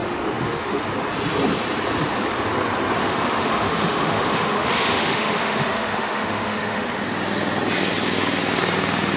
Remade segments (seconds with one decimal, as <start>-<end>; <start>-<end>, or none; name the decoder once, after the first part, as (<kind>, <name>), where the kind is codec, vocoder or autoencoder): 0.0-0.8 (autoencoder, DAC-VAE); 3.0-6.9